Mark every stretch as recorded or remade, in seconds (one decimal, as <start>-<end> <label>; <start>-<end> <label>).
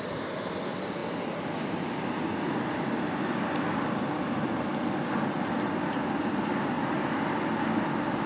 0.0-8.3 recorded